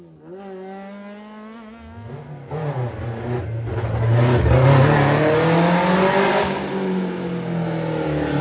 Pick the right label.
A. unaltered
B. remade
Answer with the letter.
A